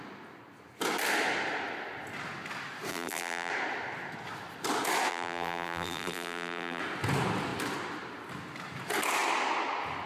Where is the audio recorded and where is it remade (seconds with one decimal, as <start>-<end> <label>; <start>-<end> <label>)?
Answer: 0.0-2.9 recorded; 2.9-3.5 remade; 3.5-5.1 recorded; 5.1-6.8 remade; 6.8-10.1 recorded